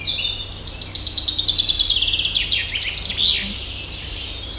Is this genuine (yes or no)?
yes